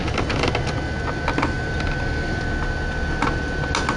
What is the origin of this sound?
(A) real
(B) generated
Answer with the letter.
A